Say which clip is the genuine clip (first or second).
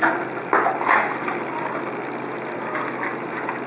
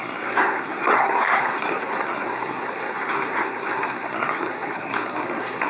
first